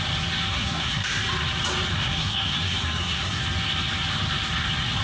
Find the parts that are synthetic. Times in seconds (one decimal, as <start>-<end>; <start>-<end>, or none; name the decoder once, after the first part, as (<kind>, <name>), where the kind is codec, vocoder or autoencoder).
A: 0.5-1.2 (codec, SNAC); 1.9-3.4